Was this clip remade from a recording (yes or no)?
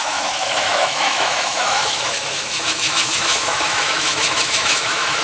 yes